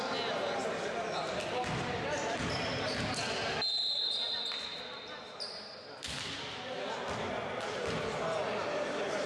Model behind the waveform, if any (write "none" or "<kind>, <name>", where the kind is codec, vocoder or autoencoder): none